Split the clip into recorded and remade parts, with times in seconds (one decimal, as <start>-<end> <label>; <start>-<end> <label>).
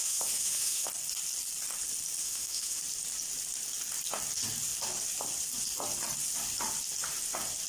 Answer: 0.0-0.9 remade; 0.9-2.2 recorded; 2.2-2.8 remade; 2.8-7.7 recorded